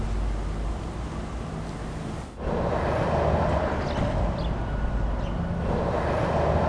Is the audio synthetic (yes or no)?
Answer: no